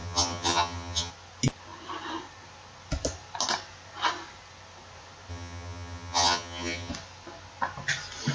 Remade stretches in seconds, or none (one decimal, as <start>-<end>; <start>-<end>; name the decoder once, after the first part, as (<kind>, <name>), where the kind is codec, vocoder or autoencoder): 0.0-1.1 (vocoder, HiFi-GAN); 5.3-6.9